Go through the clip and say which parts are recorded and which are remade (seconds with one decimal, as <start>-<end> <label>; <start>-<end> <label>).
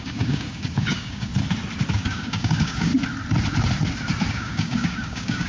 0.0-1.3 remade; 1.3-1.9 recorded; 1.9-2.9 remade; 2.9-4.3 recorded; 4.3-5.5 remade